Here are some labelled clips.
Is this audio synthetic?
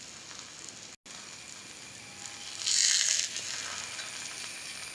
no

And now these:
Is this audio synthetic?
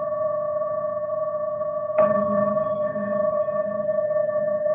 yes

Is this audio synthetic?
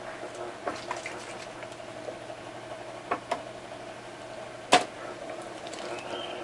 no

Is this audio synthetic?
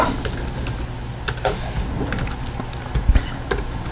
no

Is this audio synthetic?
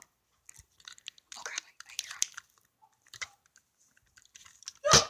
no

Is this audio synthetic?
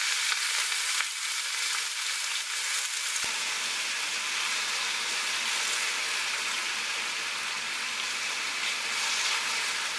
no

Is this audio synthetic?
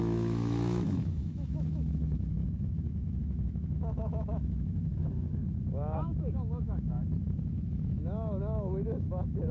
yes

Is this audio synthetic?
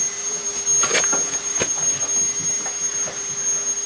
no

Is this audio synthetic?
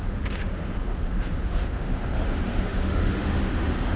yes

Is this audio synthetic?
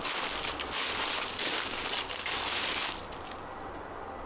no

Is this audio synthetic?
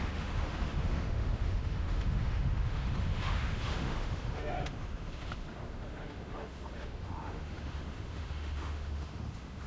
yes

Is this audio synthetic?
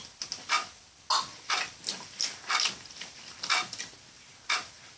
no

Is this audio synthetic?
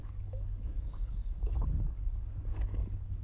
yes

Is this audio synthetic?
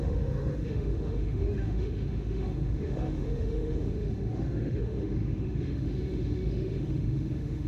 yes